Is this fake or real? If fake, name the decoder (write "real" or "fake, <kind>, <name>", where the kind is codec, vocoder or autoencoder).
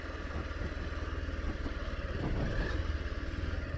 real